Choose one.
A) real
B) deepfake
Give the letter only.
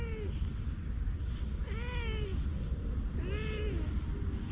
A